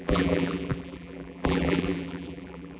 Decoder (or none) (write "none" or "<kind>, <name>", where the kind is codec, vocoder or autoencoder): vocoder, BigVGAN v2